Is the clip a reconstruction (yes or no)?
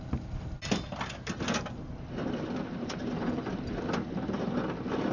no